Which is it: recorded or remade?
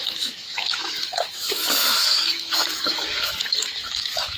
remade